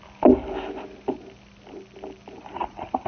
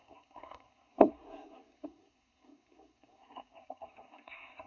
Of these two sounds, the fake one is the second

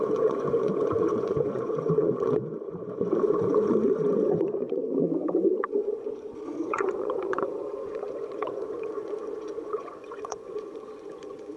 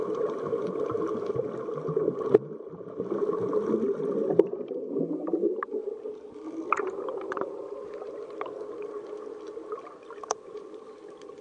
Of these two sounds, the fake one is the first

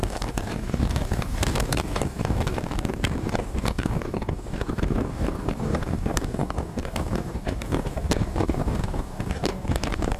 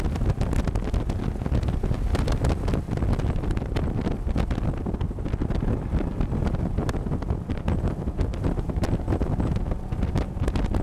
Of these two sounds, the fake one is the first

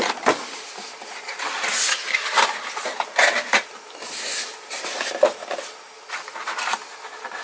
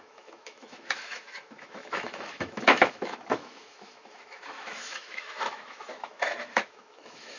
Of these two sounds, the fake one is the second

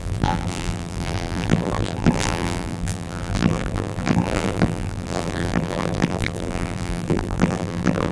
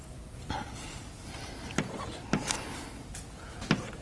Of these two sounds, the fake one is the first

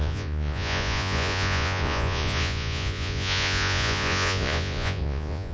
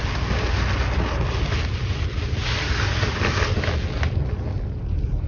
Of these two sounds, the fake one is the first